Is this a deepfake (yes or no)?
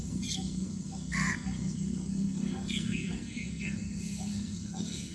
yes